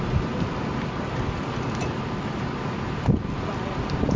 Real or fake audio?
real